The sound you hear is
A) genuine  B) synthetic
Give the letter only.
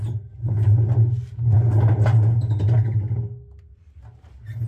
A